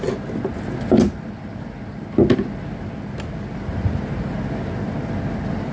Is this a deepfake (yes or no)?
no